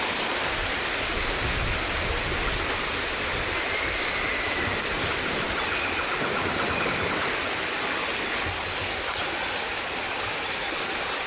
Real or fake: real